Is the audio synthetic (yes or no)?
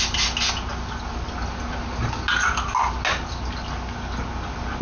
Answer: no